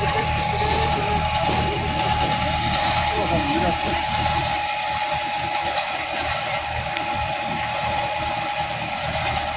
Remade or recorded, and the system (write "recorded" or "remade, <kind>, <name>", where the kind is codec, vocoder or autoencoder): remade, vocoder, BigVGAN v2